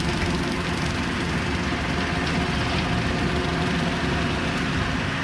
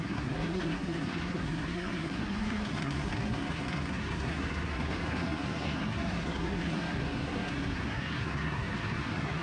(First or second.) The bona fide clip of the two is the first